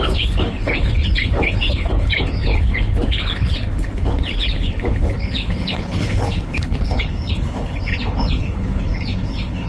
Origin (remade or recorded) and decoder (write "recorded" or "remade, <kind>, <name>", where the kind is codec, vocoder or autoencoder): remade, codec, HILCodec